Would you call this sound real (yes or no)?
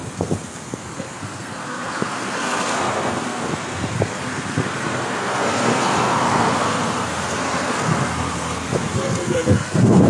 no